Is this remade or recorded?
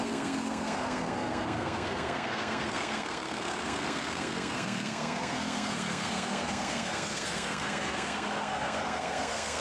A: remade